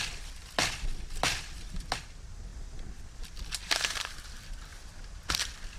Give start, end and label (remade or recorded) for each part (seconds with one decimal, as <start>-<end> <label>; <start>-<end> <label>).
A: 0.0-4.7 recorded; 4.7-5.3 remade; 5.3-5.8 recorded